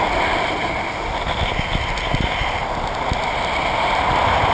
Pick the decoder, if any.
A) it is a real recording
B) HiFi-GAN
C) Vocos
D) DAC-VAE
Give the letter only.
A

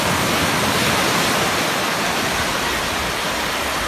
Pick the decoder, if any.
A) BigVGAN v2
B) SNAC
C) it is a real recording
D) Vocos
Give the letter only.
C